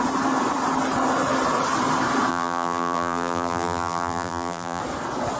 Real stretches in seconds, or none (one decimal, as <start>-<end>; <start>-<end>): 0.0-2.3; 4.8-5.4